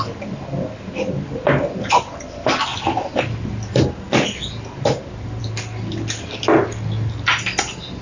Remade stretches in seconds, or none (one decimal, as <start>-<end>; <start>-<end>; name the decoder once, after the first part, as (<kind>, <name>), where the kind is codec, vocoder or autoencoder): none